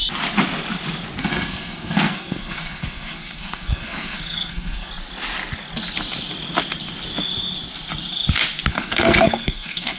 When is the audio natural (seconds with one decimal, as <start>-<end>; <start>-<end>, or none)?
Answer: 0.0-1.2; 4.9-8.7